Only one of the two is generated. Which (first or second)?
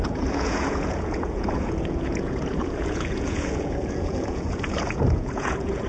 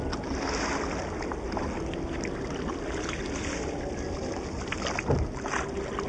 first